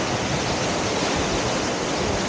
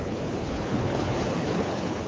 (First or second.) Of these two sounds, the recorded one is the first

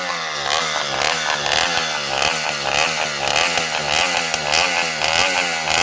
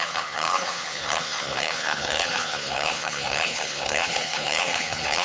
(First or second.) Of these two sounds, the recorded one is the first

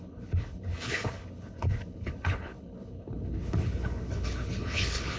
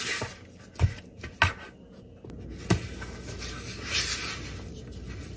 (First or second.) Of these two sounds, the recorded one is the second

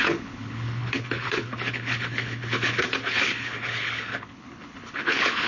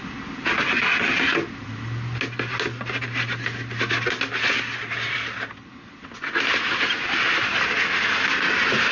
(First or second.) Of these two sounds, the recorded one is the second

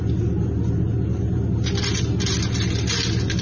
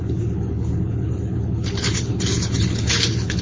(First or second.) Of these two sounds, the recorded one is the first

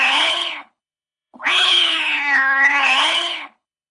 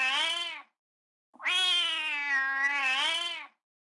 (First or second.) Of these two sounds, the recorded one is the second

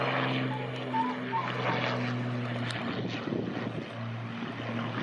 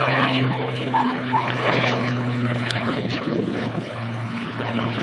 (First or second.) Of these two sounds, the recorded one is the first